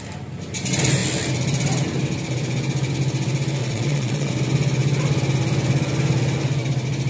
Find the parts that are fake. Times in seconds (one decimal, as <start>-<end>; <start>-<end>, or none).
3.6-4.3